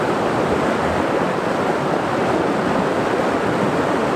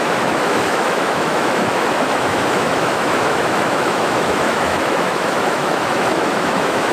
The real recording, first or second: first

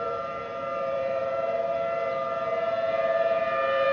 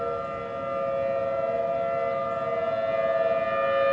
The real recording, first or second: second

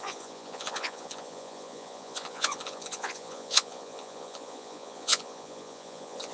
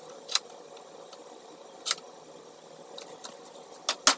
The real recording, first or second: second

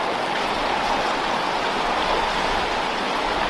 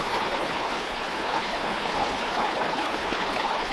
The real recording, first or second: first